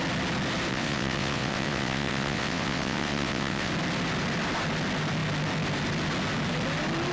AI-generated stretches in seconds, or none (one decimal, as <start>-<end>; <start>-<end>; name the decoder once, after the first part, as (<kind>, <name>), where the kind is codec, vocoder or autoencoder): 0.7-3.7 (vocoder, WaveNeXt)

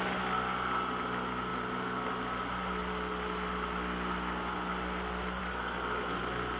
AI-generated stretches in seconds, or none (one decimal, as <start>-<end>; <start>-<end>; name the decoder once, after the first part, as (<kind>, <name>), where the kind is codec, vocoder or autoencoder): none